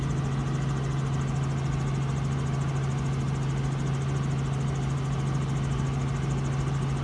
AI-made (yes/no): no